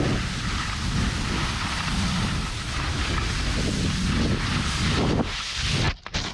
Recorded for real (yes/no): yes